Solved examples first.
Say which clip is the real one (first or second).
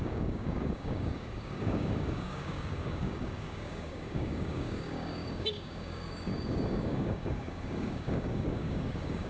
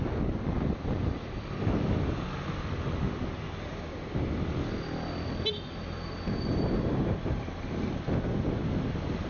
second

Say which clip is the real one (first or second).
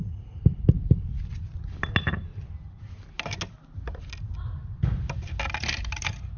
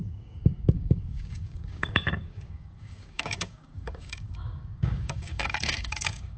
first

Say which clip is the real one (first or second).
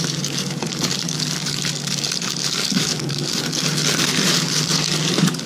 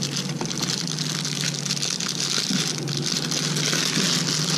second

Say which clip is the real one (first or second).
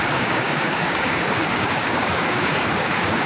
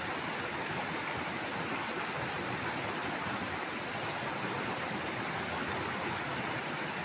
second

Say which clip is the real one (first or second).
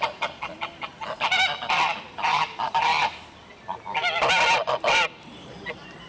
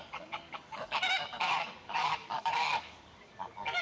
first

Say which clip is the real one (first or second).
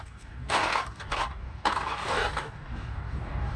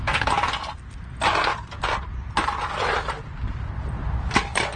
second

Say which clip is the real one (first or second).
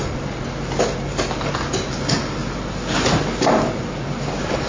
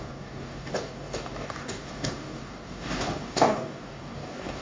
first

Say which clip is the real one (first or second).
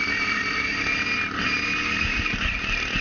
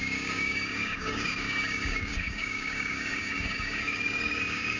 first